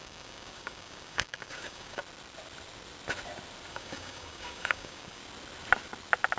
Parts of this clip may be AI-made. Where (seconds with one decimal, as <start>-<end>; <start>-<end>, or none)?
0.0-2.0; 3.7-5.2